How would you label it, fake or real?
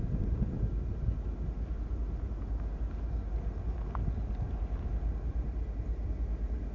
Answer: real